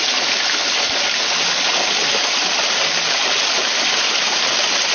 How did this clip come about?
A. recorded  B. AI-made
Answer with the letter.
A